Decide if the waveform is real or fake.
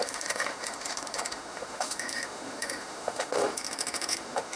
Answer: fake